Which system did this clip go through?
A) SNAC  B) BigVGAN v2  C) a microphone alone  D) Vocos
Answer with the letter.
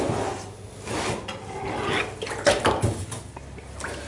C